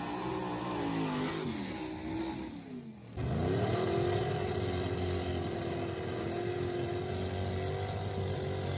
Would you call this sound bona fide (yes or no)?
yes